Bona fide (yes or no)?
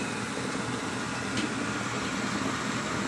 yes